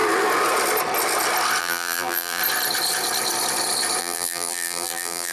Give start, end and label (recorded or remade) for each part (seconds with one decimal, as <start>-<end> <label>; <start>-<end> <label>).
0.0-1.6 recorded; 1.6-2.4 remade; 2.4-4.0 recorded; 4.0-5.3 remade